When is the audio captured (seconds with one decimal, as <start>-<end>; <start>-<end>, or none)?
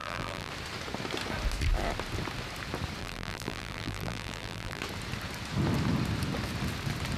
0.5-3.0; 4.8-7.2